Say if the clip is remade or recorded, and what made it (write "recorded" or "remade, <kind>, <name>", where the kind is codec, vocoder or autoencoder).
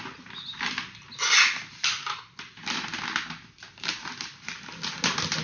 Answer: recorded